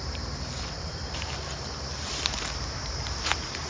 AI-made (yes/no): yes